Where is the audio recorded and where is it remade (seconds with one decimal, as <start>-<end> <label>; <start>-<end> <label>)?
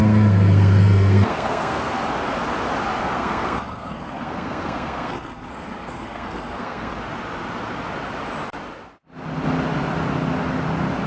0.0-2.0 remade; 2.0-3.0 recorded; 3.0-6.9 remade; 6.9-11.1 recorded